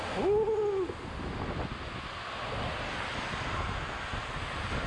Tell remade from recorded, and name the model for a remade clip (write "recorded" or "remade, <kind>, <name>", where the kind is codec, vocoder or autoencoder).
recorded